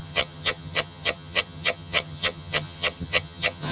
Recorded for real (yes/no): no